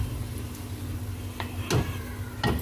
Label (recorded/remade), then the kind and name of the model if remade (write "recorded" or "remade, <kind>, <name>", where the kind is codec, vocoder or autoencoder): recorded